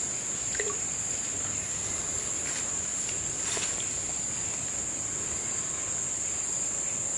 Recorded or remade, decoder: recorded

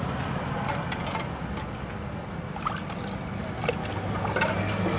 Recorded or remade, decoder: recorded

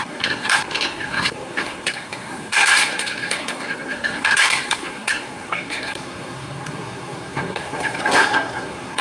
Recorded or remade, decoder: remade, codec, SNAC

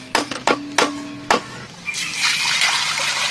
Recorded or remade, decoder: recorded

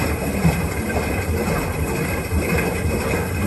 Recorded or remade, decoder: recorded